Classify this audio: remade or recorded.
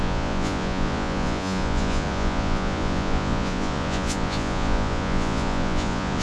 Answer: remade